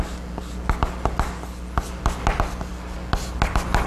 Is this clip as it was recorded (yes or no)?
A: yes